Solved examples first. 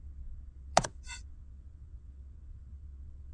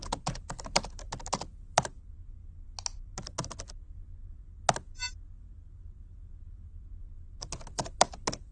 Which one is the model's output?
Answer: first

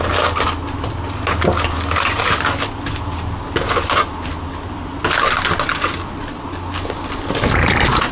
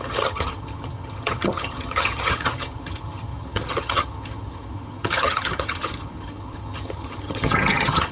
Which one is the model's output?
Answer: second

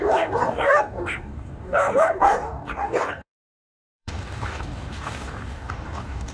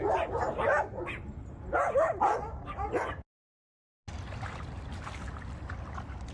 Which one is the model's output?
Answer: first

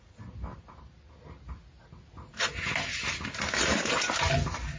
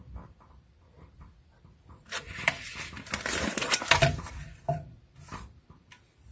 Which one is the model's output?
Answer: second